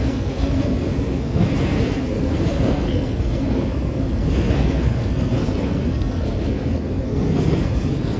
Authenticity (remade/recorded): remade